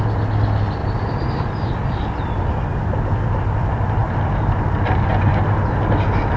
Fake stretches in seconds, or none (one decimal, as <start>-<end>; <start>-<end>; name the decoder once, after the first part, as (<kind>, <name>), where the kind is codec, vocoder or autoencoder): 0.8-1.7 (vocoder, BigVGAN v2); 4.0-5.1

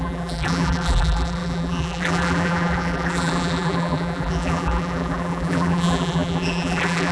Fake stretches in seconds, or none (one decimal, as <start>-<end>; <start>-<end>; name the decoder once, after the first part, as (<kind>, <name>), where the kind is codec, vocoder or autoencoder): 0.0-7.1 (vocoder, BigVGAN v2)

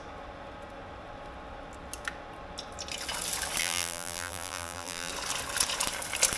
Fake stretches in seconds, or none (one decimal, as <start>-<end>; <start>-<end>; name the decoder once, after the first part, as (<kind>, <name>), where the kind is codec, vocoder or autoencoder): 3.6-5.1 (vocoder, BigVGAN v2)

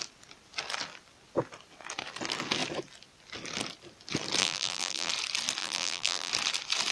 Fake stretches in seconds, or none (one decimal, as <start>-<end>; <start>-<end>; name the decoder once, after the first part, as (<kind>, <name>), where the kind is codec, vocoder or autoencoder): 4.4-5.1 (vocoder, BigVGAN v2); 5.6-6.3